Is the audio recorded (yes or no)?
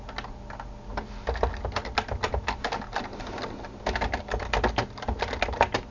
yes